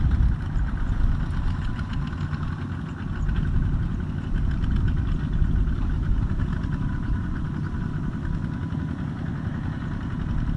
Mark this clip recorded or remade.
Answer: recorded